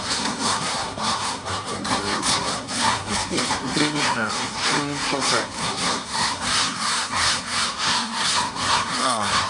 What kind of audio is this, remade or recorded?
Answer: remade